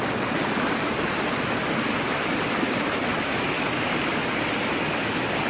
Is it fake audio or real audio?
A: real